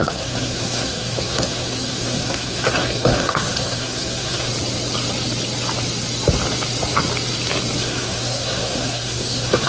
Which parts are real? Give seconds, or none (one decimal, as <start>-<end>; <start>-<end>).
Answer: 4.5-7.8